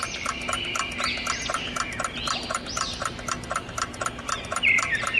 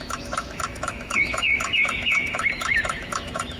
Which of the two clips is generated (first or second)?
second